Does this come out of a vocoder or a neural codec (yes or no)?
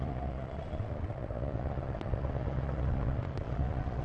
yes